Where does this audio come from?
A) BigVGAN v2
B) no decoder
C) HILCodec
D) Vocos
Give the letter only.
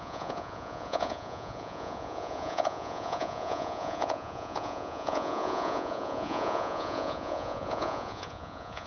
D